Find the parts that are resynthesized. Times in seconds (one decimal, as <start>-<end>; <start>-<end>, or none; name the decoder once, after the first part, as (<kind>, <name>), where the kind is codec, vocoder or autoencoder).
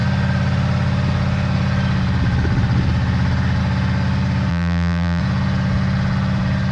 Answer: 4.5-5.2 (vocoder, BigVGAN v2)